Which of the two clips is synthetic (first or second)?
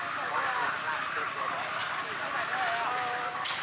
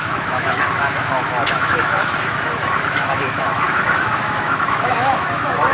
second